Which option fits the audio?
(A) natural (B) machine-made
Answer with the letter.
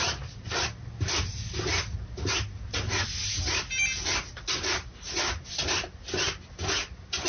A